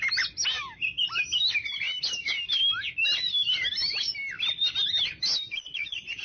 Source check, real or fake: real